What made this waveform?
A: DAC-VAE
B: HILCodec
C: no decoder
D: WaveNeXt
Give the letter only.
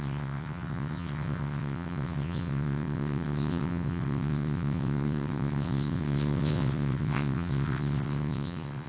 D